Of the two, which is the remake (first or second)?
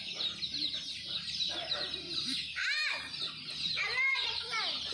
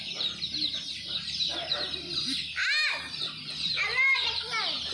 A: first